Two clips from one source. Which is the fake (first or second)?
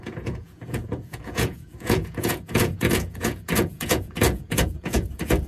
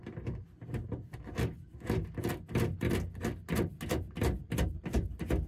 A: first